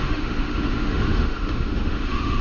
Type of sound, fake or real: fake